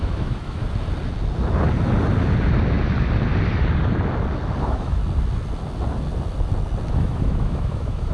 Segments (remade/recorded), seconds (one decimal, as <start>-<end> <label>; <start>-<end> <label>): 0.0-0.6 remade; 0.6-4.6 recorded; 4.6-5.0 remade; 5.0-6.9 recorded; 6.9-8.1 remade